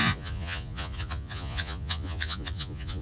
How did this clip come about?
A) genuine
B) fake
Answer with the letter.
B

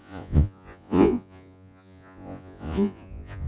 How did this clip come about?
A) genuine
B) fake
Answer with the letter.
B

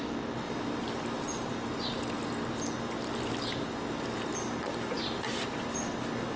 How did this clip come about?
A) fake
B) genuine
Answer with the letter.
B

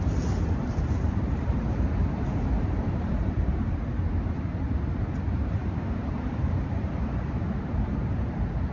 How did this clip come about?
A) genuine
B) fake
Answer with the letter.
B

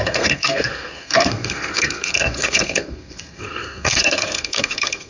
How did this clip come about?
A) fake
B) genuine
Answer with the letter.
A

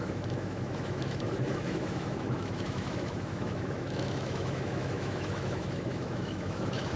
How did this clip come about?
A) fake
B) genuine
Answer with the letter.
A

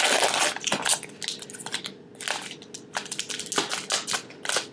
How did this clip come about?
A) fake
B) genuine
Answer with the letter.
B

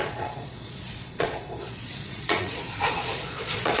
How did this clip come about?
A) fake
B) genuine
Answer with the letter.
A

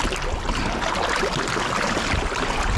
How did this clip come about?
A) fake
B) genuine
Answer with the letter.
B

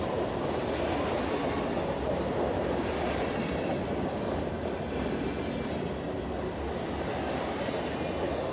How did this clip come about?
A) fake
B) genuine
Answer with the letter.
B